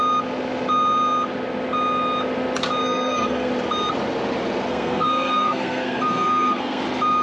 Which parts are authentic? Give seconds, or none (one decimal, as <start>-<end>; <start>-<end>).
0.0-2.8; 3.5-4.7; 6.8-7.2